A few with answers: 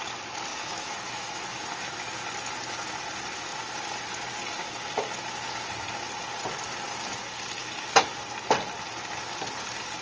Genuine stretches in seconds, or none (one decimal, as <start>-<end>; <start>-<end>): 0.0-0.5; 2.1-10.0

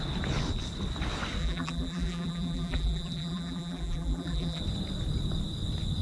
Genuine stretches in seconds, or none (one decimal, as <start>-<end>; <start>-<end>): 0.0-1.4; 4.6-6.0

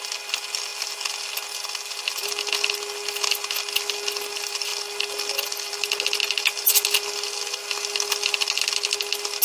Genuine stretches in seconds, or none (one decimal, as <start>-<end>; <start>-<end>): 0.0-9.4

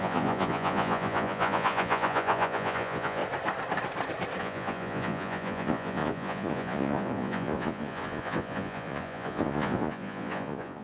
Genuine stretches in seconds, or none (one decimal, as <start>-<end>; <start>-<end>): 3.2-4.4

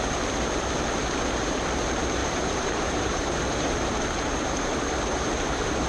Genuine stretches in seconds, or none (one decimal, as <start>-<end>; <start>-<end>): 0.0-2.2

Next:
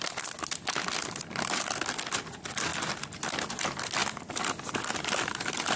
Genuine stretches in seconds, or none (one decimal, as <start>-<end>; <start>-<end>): 0.0-5.8